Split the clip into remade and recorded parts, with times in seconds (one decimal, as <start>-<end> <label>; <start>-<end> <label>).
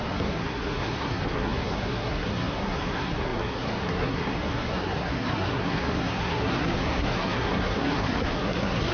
0.0-8.9 remade